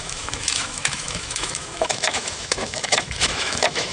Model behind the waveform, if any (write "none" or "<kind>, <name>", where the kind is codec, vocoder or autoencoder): autoencoder, DAC-VAE